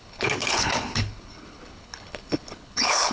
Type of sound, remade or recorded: remade